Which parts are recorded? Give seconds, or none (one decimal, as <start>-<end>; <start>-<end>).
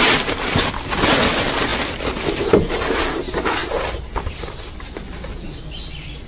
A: 0.0-6.3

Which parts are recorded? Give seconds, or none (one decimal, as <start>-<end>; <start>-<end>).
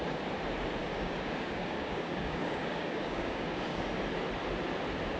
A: 0.0-0.8; 3.9-5.2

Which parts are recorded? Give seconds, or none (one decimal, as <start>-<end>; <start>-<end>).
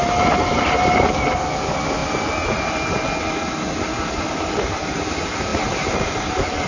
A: 0.0-6.7